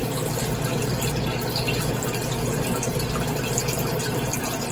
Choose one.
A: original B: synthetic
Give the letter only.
A